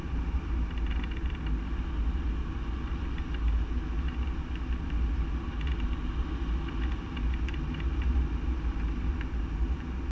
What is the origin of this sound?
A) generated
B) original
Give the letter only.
B